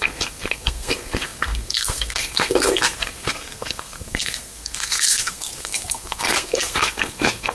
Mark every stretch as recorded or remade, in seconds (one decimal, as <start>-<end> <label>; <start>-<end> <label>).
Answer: 0.0-7.5 remade